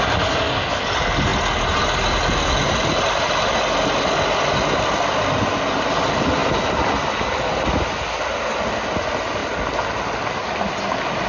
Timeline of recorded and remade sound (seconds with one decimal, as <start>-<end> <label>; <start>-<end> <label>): 0.0-11.3 recorded